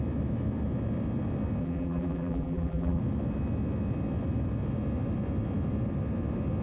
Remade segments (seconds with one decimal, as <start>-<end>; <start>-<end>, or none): 1.6-3.0